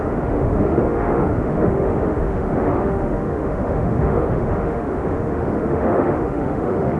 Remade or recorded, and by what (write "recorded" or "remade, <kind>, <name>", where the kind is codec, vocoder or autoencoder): remade, autoencoder, DAC-VAE